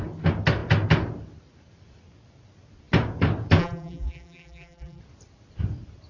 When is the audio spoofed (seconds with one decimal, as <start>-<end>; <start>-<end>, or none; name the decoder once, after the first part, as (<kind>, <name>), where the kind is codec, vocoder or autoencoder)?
3.6-5.0 (vocoder, BigVGAN v2)